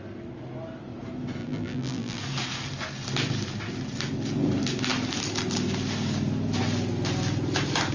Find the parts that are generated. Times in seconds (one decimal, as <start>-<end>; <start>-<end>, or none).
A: 1.4-2.2